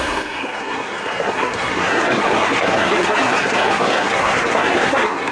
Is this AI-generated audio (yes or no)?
yes